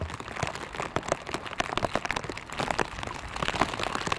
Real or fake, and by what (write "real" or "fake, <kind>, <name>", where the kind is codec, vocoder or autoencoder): real